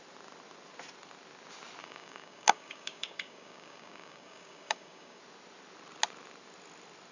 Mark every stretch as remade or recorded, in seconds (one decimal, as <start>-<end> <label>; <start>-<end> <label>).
0.0-1.8 recorded; 1.8-5.2 remade; 5.2-7.1 recorded